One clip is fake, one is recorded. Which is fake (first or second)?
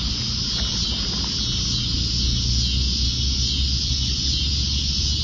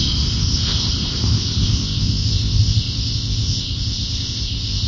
second